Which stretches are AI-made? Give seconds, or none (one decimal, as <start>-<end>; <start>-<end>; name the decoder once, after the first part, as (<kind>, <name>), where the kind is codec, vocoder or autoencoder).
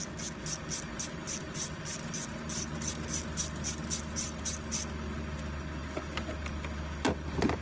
none